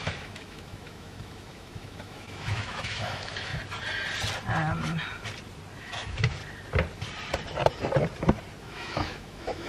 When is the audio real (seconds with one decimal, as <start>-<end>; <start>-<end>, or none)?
3.5-5.8; 6.4-8.6